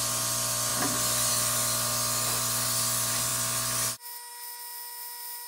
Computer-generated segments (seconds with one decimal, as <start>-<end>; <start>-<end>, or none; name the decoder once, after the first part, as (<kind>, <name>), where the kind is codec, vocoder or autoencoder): none